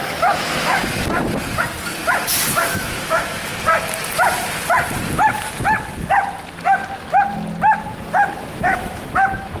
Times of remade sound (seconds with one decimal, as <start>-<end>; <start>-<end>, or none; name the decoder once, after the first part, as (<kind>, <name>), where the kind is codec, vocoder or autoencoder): 0.0-0.8 (autoencoder, DAC-VAE); 2.6-3.5; 8.4-9.6